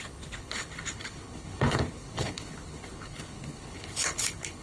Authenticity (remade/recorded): remade